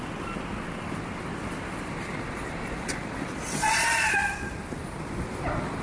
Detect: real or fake real